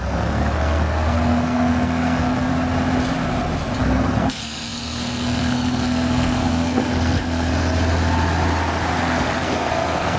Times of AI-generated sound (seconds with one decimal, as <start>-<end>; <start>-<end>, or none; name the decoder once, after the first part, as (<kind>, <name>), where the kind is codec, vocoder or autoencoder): 0.0-2.5 (codec, SNAC); 3.8-7.5; 9.0-10.2